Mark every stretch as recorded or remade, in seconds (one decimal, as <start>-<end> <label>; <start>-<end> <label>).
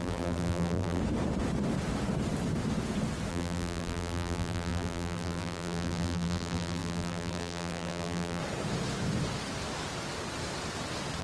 0.0-1.0 remade; 1.0-3.3 recorded; 3.3-8.4 remade; 8.4-11.2 recorded